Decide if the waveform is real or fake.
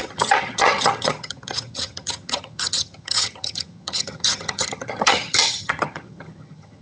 fake